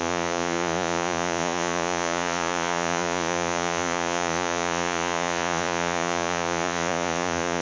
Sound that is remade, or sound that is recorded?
remade